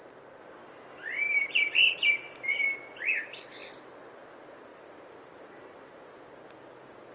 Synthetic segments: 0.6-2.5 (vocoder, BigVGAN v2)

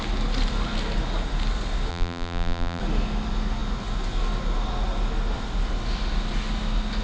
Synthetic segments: 1.9-2.8 (vocoder, BigVGAN v2)

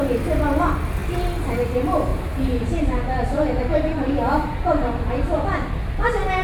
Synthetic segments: 2.1-5.1 (vocoder, BigVGAN v2)

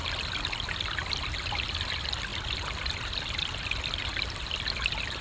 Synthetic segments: 1.0-1.9 (vocoder, BigVGAN v2); 2.3-3.8